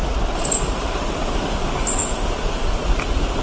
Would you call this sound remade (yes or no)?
no